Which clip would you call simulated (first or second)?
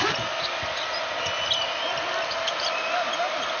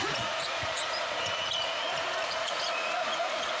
second